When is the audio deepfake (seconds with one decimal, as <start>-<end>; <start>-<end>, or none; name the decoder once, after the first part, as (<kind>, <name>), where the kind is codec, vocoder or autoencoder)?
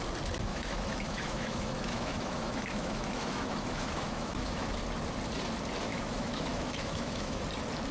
0.5-4.8 (autoencoder, DAC-VAE); 5.9-7.4